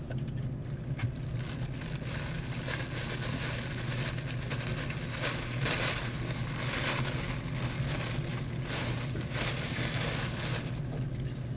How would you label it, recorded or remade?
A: recorded